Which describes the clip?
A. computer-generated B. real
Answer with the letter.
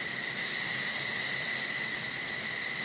B